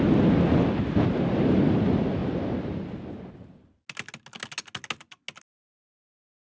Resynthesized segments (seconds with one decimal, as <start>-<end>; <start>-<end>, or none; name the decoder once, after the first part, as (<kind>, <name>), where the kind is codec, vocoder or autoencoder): none